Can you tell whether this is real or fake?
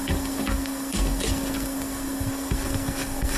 fake